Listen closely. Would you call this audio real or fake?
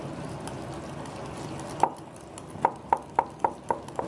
real